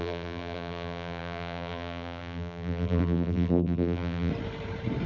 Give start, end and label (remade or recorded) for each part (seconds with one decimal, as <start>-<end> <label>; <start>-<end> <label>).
0.0-4.3 remade; 4.3-5.1 recorded